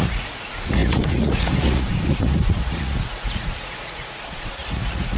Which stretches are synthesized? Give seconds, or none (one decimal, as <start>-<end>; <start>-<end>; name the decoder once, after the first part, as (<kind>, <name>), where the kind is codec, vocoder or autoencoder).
0.0-5.2 (vocoder, Vocos)